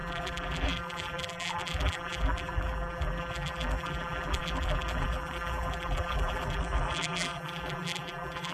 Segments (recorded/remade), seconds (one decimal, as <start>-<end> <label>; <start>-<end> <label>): 0.0-8.5 remade